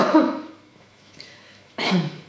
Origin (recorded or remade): remade